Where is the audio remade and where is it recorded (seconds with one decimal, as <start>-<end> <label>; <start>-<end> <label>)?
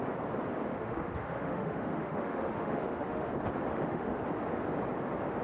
0.0-0.7 recorded; 0.7-3.3 remade; 3.3-3.7 recorded; 3.7-4.2 remade; 4.2-5.4 recorded